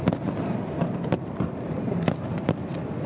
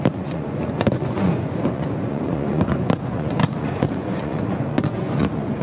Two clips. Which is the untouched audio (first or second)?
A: first